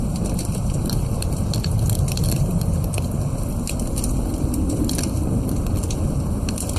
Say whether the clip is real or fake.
real